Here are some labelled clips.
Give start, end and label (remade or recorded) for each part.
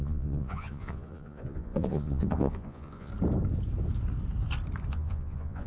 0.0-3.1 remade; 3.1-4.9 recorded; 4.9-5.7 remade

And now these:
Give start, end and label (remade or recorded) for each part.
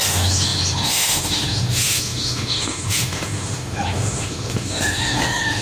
0.0-5.6 remade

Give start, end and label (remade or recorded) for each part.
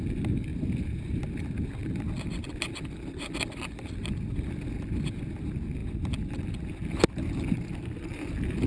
0.0-0.5 recorded; 0.5-1.2 remade; 1.2-8.7 recorded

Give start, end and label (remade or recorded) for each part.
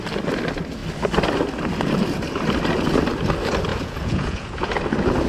0.0-3.7 recorded; 3.7-4.7 remade; 4.7-5.3 recorded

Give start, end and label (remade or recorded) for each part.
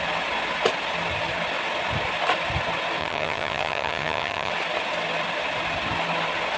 0.0-3.0 recorded; 3.0-4.5 remade; 4.5-6.6 recorded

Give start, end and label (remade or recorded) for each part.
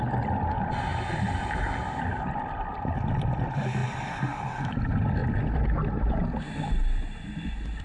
0.0-7.8 recorded